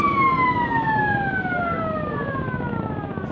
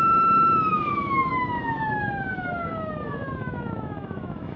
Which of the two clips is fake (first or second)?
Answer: second